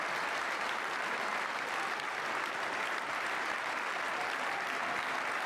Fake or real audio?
real